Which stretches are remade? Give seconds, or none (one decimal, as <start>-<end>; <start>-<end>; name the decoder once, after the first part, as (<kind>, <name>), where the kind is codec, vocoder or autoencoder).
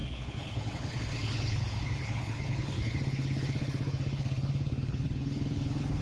0.0-6.0 (codec, HILCodec)